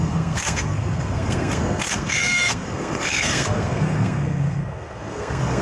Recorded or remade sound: remade